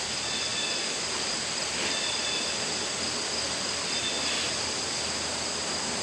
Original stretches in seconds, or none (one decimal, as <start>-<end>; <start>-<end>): 0.0-6.0